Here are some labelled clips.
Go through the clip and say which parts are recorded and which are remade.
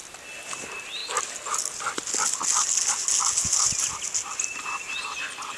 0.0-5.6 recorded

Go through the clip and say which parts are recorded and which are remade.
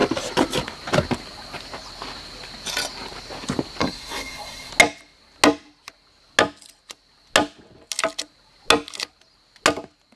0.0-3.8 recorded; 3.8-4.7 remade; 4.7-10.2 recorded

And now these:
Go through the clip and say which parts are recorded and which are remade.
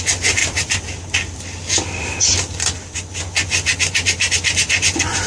0.0-5.3 recorded